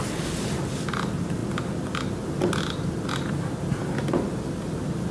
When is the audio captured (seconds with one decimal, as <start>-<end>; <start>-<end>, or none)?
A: 0.0-5.1